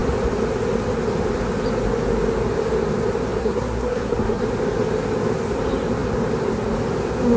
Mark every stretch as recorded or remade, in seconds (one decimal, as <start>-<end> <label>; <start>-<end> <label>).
0.0-3.4 recorded; 3.4-4.4 remade; 4.4-7.4 recorded